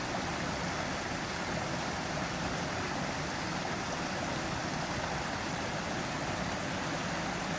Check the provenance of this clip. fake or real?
real